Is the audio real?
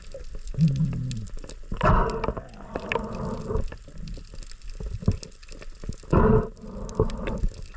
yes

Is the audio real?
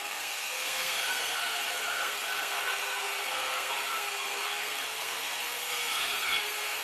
no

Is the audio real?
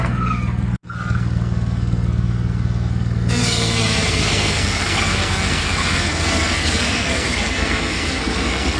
no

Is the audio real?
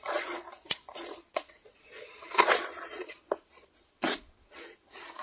no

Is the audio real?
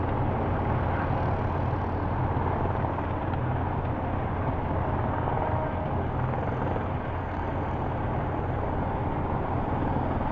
yes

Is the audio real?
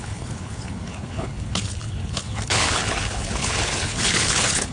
no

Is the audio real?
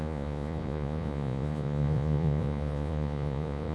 no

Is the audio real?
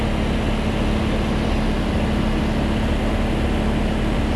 yes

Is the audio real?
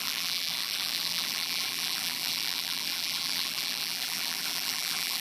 no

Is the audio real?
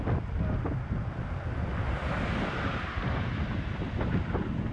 yes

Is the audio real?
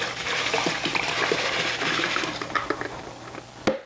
yes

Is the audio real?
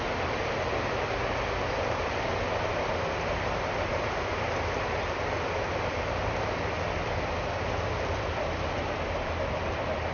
yes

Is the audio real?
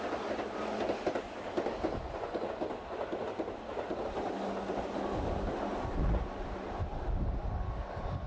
yes